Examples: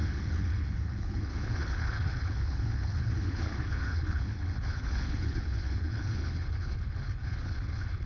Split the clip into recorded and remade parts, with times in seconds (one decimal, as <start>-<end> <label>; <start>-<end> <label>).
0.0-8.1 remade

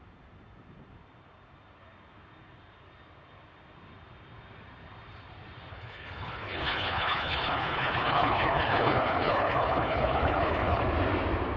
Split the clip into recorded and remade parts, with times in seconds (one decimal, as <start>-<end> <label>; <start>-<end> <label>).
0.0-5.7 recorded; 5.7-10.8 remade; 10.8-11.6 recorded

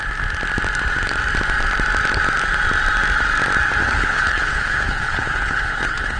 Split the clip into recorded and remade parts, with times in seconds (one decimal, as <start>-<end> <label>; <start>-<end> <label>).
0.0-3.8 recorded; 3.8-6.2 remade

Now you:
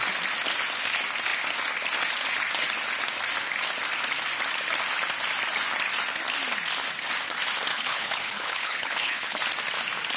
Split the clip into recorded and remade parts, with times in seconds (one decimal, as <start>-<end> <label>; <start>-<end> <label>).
0.0-7.7 recorded; 7.7-9.4 remade; 9.4-10.2 recorded

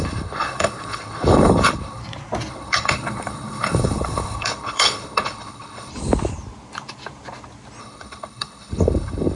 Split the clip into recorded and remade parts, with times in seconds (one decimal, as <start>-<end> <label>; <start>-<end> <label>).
0.0-2.0 remade; 2.0-2.5 recorded; 2.5-5.9 remade; 5.9-7.8 recorded; 7.8-9.4 remade

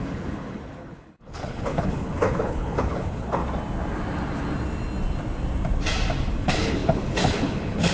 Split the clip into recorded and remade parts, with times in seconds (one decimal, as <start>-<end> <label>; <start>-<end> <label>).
0.0-3.4 remade; 3.4-6.3 recorded; 6.3-7.9 remade

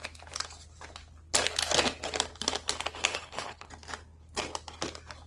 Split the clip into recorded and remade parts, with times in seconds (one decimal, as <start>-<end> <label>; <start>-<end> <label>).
0.0-3.1 recorded; 3.1-3.7 remade; 3.7-5.3 recorded

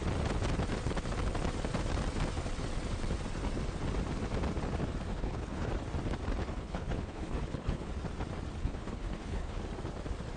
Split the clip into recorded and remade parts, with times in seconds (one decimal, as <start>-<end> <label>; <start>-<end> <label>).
0.0-5.1 recorded; 5.1-5.7 remade; 5.7-6.4 recorded; 6.4-7.9 remade; 7.9-8.6 recorded; 8.6-9.6 remade; 9.6-10.4 recorded